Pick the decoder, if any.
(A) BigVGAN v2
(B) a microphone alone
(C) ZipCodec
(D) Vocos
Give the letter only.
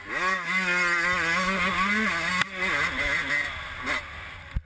B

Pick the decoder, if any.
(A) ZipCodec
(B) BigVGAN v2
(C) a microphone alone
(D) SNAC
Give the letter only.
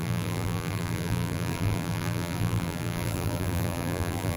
B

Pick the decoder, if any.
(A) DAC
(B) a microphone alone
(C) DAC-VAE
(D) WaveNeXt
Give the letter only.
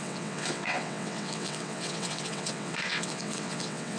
D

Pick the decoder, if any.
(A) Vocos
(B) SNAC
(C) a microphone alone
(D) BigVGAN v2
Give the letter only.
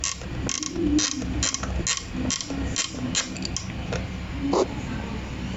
C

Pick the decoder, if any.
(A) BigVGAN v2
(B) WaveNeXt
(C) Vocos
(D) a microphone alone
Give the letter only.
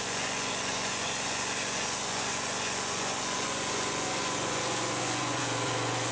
C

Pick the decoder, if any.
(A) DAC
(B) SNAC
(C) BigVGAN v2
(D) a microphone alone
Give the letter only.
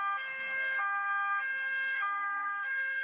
B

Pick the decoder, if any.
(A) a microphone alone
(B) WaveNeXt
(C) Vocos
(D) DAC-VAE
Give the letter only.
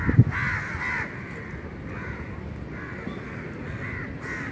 A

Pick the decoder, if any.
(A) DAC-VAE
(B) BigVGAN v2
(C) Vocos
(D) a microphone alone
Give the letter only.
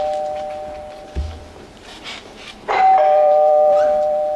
B